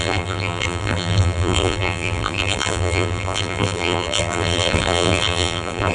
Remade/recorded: remade